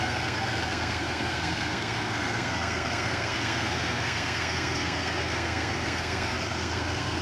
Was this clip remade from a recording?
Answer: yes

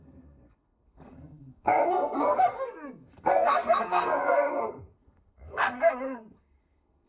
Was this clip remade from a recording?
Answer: yes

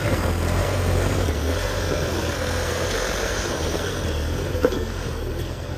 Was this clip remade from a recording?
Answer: yes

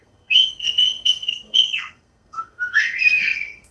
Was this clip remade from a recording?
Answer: yes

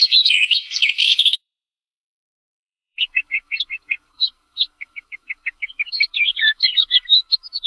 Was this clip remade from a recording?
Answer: yes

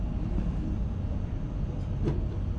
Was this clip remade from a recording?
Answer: no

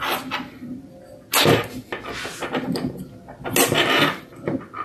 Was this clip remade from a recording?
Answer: no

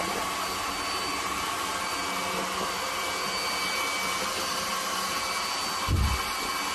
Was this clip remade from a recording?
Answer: no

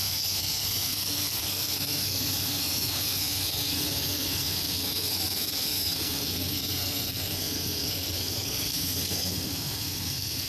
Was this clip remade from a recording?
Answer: yes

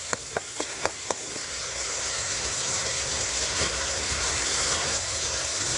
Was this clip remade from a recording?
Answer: yes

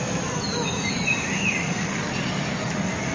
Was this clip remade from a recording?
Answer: no